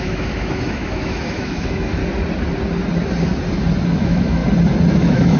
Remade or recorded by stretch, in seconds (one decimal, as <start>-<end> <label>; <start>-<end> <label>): 0.0-2.0 remade; 2.0-4.0 recorded; 4.0-4.4 remade; 4.4-4.9 recorded; 4.9-5.4 remade